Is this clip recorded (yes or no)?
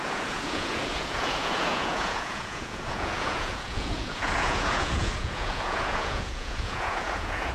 no